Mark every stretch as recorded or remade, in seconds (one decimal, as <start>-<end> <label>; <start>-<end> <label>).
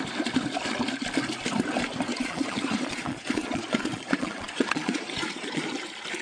0.0-2.1 recorded; 2.1-5.7 remade; 5.7-6.2 recorded